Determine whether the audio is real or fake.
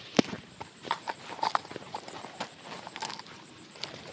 fake